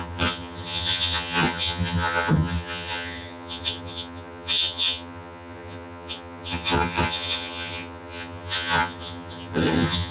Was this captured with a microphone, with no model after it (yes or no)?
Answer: no